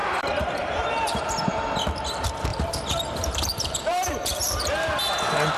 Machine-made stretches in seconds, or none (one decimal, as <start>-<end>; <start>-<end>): 0.0-1.3; 2.5-4.7